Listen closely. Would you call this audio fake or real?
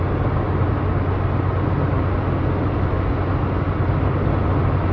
real